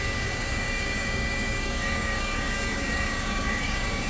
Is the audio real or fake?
fake